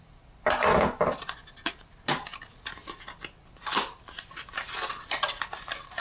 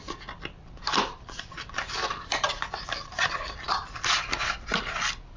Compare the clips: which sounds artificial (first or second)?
second